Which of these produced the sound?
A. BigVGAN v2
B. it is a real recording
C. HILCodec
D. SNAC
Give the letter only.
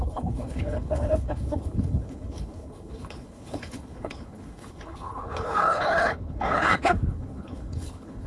C